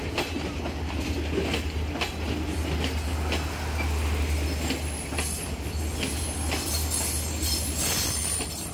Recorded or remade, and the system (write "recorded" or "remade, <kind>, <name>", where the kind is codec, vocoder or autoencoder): recorded